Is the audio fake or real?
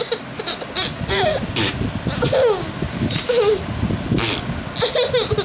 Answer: real